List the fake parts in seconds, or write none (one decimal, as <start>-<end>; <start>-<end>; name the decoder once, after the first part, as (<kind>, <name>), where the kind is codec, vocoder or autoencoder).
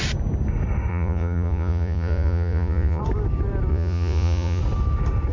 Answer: 0.9-3.0 (vocoder, Vocos); 3.7-4.6